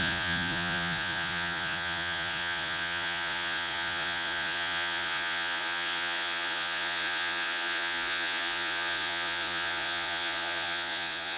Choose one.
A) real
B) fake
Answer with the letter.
B